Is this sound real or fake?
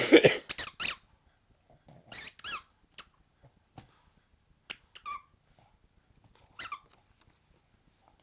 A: real